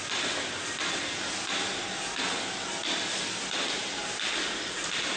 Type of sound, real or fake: real